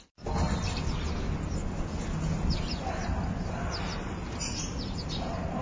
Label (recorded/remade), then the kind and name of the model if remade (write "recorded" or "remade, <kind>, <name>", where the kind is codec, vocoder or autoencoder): recorded